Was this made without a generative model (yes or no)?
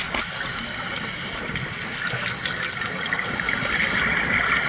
yes